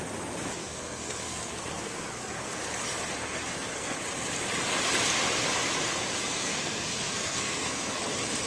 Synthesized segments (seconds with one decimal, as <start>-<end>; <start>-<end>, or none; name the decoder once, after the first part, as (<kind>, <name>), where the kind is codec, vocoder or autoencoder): 0.6-2.7 (codec, SNAC); 3.2-4.0; 6.2-8.0